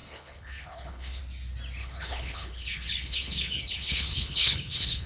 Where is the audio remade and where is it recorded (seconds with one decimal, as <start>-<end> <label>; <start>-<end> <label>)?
0.0-1.2 remade; 1.2-1.8 recorded; 1.8-5.1 remade